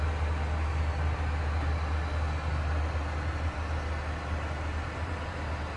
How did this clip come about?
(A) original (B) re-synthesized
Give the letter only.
A